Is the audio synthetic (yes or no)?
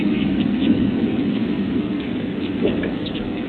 yes